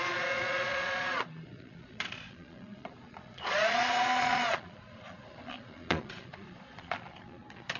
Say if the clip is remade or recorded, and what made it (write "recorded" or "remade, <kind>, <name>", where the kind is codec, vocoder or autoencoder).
remade, vocoder, Vocos